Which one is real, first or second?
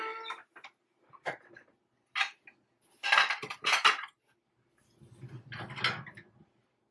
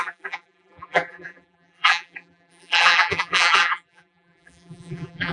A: first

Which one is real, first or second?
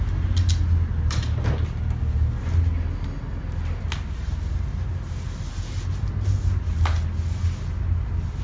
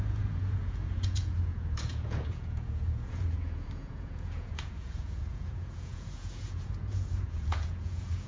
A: first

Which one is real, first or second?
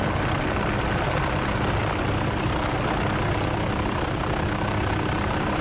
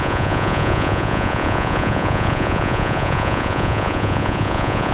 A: first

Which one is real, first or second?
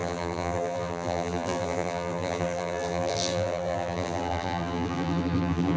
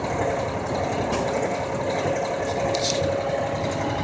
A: second